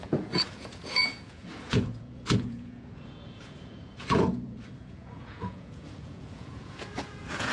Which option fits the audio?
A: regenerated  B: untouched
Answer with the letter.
A